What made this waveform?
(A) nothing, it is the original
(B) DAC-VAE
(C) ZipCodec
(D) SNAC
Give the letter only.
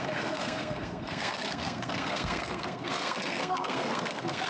D